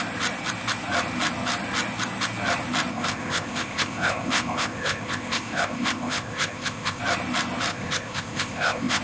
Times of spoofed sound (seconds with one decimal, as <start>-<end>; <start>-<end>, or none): 2.9-7.0; 7.7-9.0